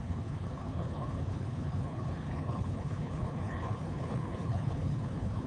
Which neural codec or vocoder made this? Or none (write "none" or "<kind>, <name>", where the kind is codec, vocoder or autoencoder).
codec, HILCodec